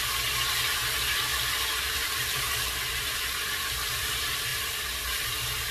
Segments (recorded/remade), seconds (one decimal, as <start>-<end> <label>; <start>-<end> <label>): 0.0-1.3 recorded; 1.3-4.1 remade; 4.1-4.5 recorded; 4.5-5.3 remade; 5.3-5.7 recorded